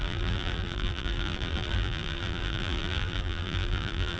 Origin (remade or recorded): remade